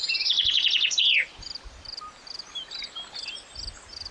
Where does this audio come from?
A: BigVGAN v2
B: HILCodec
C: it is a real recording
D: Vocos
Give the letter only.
C